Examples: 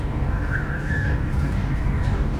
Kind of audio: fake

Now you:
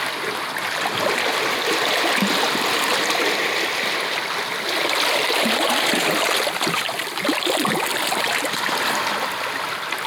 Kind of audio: real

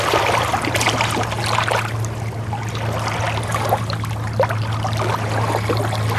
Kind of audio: real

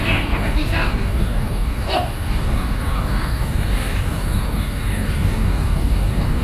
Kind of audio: fake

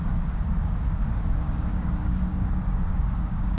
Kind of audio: fake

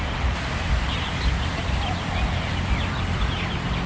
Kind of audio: real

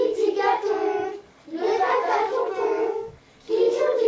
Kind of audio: fake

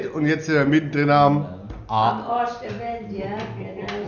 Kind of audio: real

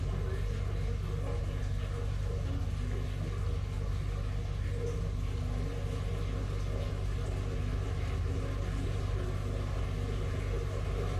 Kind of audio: real